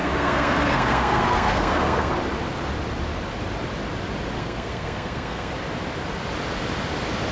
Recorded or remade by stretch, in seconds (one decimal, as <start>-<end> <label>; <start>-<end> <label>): 0.0-2.1 remade; 2.1-4.4 recorded; 4.4-5.5 remade; 5.5-7.3 recorded